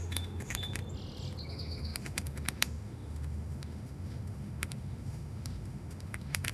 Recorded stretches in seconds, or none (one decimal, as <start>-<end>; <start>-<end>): 0.8-1.5